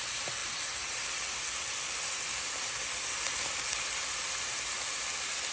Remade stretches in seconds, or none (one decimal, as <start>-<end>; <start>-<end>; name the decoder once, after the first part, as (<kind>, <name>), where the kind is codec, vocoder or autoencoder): none